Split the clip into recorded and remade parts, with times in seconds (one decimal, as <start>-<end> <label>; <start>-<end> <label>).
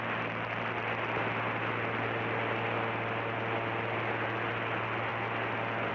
0.0-5.9 recorded